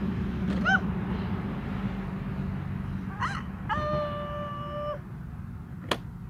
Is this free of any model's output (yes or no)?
yes